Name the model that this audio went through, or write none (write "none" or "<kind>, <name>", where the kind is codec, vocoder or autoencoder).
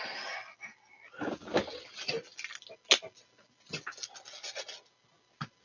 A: none